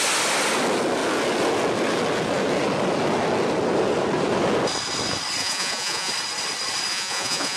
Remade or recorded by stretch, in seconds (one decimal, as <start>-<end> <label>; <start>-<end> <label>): 0.0-5.4 recorded; 5.4-6.1 remade; 6.1-6.9 recorded; 6.9-7.6 remade